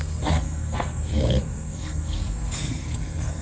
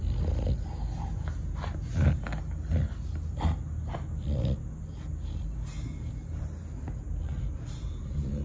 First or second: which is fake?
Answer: first